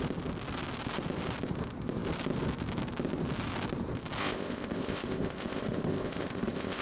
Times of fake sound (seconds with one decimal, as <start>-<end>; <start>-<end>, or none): 4.2-6.8